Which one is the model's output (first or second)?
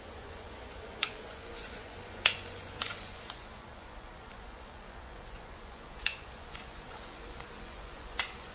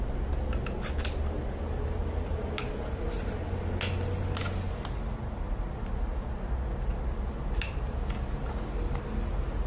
first